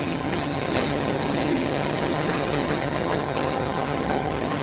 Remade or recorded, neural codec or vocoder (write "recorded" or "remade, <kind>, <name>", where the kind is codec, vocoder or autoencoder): remade, vocoder, HiFi-GAN